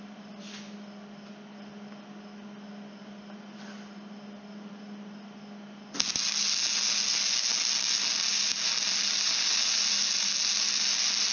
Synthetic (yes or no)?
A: no